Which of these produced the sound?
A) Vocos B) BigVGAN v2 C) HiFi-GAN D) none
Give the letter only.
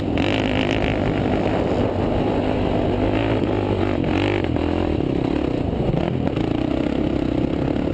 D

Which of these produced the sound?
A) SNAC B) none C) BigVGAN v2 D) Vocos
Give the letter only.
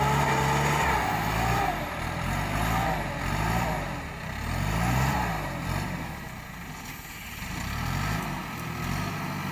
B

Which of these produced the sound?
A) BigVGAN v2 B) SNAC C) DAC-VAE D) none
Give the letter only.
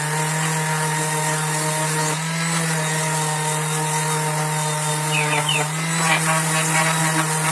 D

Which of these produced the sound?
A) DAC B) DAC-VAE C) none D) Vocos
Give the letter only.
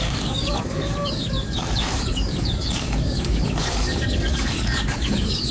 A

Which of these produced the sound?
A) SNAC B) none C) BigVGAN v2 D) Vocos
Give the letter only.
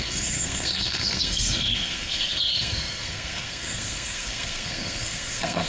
A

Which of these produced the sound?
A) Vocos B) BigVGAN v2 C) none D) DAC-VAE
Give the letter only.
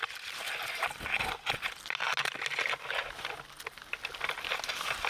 C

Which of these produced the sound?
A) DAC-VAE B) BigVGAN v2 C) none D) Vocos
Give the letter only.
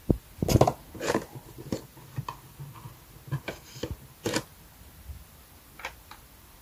C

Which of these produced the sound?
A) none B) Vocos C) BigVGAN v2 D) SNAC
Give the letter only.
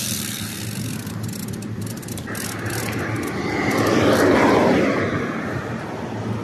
A